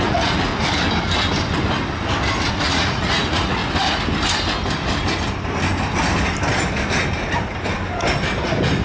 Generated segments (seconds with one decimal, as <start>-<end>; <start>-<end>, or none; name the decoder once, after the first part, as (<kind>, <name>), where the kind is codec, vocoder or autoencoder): 0.0-0.5 (vocoder, Vocos); 2.5-3.6